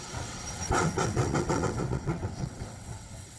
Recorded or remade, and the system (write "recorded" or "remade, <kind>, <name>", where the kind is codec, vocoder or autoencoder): remade, vocoder, WaveNeXt